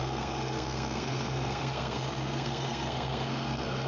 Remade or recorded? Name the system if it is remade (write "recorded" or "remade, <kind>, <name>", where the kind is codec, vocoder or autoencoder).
remade, codec, SNAC